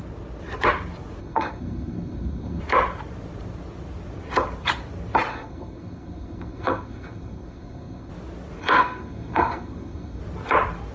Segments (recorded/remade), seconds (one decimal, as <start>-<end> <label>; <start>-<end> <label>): 0.0-1.2 recorded; 1.2-2.6 remade; 2.6-5.3 recorded; 5.3-8.1 remade; 8.1-8.6 recorded; 8.6-10.2 remade; 10.2-10.9 recorded